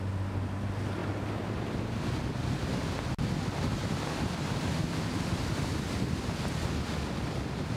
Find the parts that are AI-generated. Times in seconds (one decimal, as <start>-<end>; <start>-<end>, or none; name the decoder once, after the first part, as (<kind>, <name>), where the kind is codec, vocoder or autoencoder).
3.8-5.4 (vocoder, BigVGAN v2)